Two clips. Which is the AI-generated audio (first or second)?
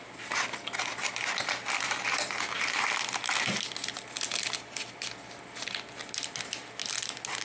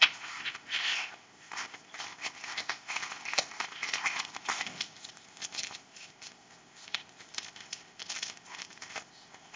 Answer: second